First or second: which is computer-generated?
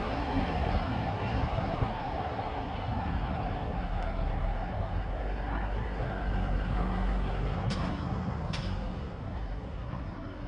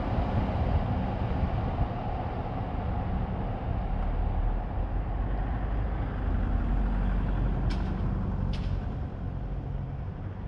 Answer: first